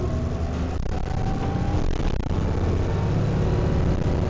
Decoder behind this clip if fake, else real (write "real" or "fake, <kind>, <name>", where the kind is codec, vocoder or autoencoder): real